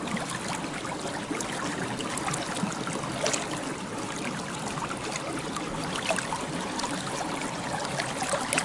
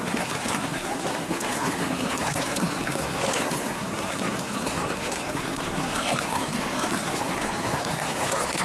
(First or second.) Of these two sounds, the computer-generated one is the second